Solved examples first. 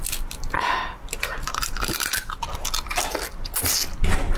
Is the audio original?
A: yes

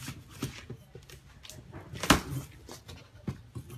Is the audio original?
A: yes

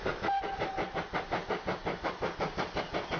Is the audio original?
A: yes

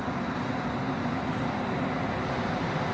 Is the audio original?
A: yes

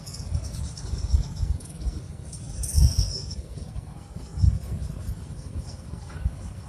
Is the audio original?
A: no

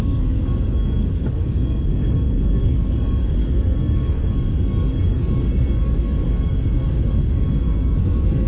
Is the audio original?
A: no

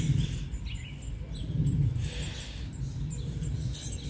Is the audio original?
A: yes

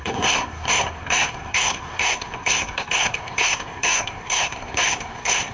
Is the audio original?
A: no